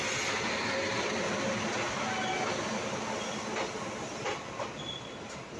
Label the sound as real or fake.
real